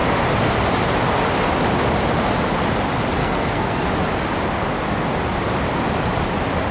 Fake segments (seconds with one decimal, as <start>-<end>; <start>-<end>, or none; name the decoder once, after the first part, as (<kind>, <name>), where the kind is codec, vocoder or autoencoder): 3.2-3.9 (codec, SNAC)